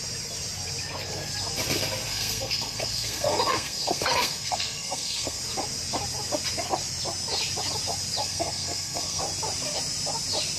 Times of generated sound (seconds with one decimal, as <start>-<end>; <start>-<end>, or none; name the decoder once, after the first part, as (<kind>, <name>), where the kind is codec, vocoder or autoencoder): 2.1-5.4 (codec, SNAC); 8.2-9.2